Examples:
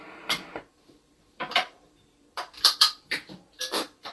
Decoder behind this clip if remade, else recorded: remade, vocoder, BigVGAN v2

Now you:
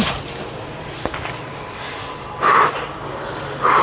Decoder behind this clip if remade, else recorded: recorded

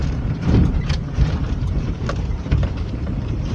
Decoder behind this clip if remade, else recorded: remade, vocoder, BigVGAN v2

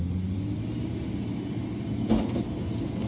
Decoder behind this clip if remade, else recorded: recorded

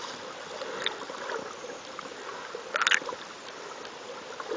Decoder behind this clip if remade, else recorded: recorded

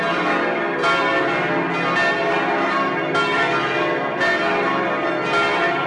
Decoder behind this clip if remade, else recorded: recorded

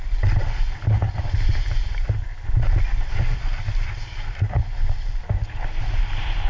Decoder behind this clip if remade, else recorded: recorded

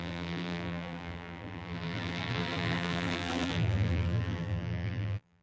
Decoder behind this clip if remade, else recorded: remade, vocoder, BigVGAN v2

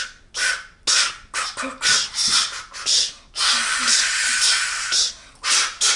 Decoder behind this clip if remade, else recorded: recorded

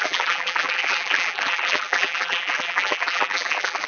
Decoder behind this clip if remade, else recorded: remade, vocoder, BigVGAN v2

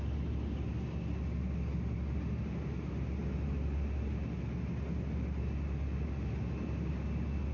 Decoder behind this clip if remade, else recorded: recorded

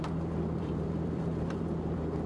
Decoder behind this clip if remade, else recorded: remade, vocoder, BigVGAN v2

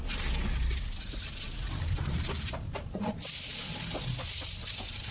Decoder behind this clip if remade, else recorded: recorded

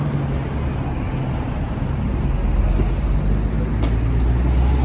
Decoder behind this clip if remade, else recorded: recorded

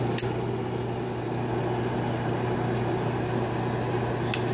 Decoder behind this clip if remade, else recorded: recorded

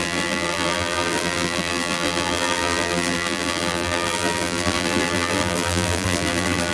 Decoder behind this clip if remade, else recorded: remade, vocoder, BigVGAN v2